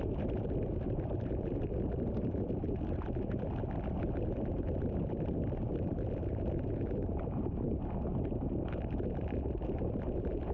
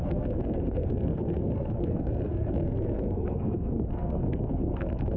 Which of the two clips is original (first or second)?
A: first